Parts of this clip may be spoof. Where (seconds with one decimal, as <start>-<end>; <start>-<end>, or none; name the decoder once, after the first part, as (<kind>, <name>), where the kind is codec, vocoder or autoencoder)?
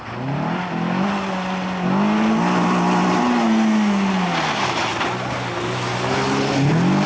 none